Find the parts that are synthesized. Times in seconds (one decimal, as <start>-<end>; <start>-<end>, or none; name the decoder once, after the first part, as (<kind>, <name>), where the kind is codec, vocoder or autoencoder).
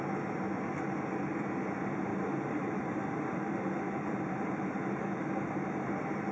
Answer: 2.1-5.2 (vocoder, BigVGAN v2)